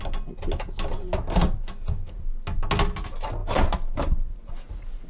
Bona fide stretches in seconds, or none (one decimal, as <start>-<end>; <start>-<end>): 0.0-5.1